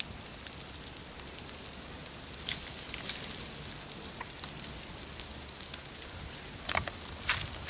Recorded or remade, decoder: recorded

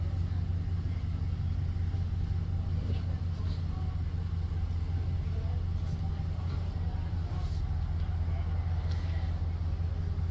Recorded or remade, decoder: recorded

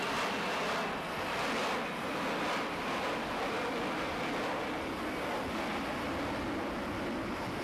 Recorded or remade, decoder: recorded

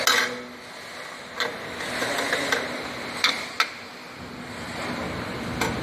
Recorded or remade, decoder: recorded